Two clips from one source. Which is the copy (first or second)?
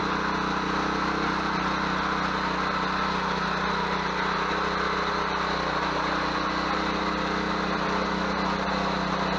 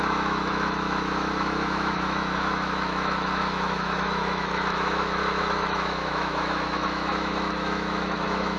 second